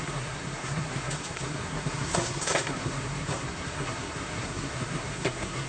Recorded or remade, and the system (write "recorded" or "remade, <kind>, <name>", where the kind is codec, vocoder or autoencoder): remade, codec, SNAC